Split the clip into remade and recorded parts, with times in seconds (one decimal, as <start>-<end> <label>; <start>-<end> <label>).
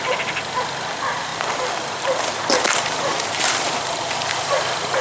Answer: 0.0-5.0 remade